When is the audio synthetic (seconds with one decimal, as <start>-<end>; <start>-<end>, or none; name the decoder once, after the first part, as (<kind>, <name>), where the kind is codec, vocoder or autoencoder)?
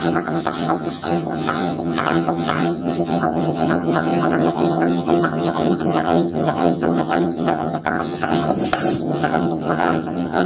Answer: 0.0-8.5 (vocoder, HiFi-GAN); 9.0-10.5